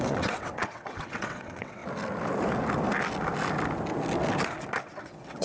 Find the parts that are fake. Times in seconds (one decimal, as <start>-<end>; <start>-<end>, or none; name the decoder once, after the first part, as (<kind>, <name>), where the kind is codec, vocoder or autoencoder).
0.0-1.8 (vocoder, WaveNeXt); 5.0-5.4